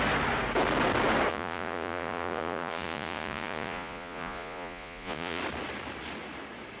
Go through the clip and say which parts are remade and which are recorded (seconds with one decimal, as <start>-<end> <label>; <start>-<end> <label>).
0.0-1.3 recorded; 1.3-5.4 remade; 5.4-6.8 recorded